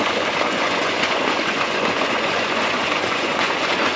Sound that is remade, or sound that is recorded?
remade